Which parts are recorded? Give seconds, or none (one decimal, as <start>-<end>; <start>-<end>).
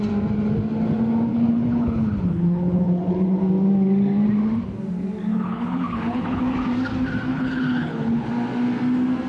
0.0-1.3; 3.4-5.3; 6.4-7.3; 8.3-9.3